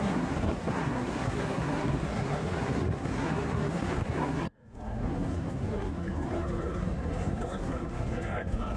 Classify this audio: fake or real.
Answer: fake